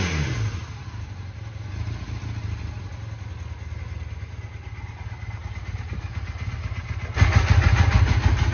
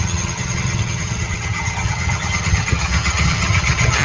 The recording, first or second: first